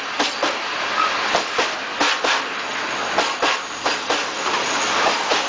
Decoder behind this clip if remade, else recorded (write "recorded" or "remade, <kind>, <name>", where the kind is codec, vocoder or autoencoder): recorded